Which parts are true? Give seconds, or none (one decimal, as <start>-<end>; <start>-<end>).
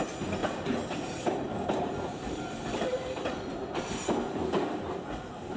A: 0.0-0.4; 3.8-5.6